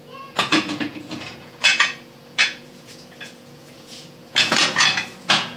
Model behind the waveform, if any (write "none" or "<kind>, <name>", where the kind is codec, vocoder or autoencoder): vocoder, Vocos